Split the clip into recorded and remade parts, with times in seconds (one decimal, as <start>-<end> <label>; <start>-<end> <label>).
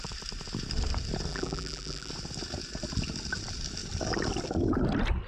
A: 0.0-1.3 recorded; 1.3-2.1 remade; 2.1-5.3 recorded